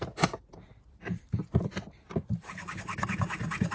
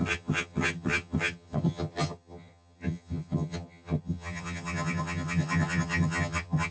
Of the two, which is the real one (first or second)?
first